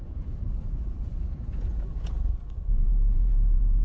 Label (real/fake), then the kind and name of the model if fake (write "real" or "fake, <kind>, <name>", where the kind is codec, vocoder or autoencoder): fake, vocoder, Vocos